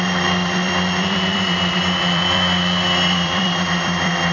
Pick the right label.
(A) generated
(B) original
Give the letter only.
A